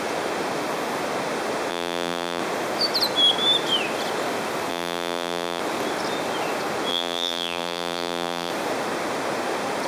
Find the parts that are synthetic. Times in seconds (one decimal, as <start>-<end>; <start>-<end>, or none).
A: 1.7-2.4; 4.7-5.6; 6.9-8.5